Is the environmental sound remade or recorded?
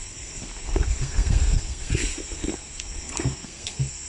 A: remade